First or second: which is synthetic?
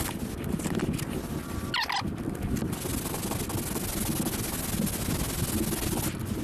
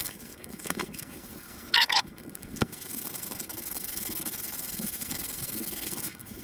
second